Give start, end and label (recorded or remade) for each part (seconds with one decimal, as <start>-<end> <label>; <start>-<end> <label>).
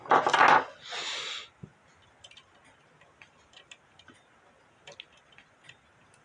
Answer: 0.0-6.2 recorded